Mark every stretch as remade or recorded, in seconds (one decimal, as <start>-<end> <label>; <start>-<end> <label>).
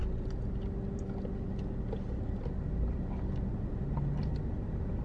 0.0-5.0 recorded